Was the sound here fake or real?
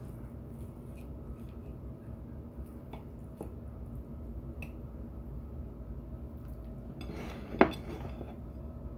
real